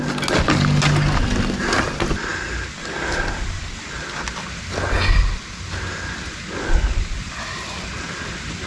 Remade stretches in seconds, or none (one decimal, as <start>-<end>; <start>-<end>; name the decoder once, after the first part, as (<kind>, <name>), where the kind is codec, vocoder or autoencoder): none